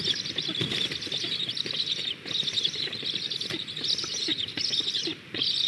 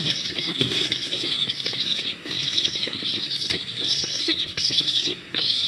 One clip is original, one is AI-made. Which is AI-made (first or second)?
second